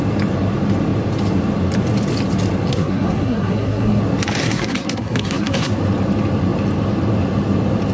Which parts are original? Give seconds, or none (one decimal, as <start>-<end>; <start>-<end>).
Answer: 0.0-2.7; 4.0-4.4; 5.7-7.9